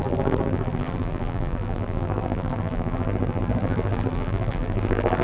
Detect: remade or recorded remade